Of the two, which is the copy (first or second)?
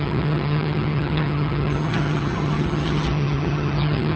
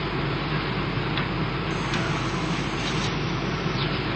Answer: first